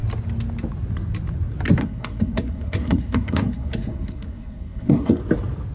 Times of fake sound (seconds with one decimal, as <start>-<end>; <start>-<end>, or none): 1.8-5.2